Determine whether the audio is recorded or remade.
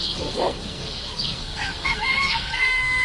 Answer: remade